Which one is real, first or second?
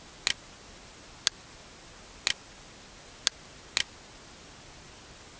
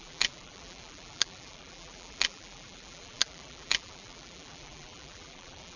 first